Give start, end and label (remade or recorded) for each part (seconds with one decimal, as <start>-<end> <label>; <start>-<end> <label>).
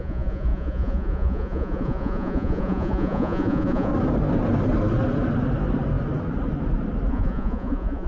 0.0-3.9 remade; 3.9-7.1 recorded; 7.1-8.1 remade